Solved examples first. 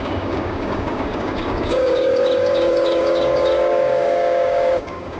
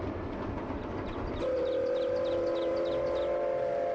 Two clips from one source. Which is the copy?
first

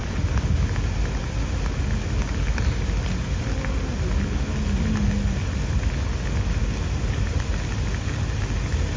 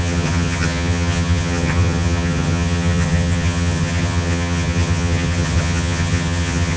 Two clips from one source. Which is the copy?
second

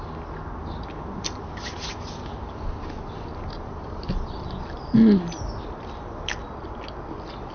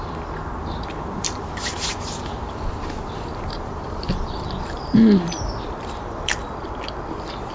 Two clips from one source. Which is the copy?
second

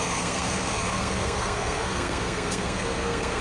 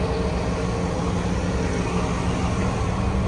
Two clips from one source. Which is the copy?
first